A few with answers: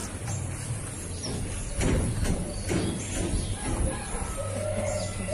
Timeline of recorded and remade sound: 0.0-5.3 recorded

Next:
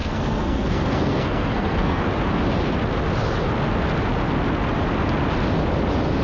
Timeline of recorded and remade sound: 0.0-2.0 remade; 2.0-6.2 recorded

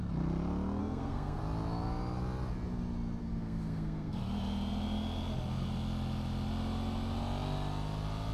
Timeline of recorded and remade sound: 0.0-0.8 recorded; 0.8-1.4 remade; 1.4-3.2 recorded; 3.2-4.2 remade; 4.2-8.3 recorded